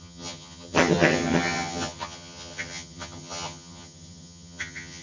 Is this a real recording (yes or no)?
no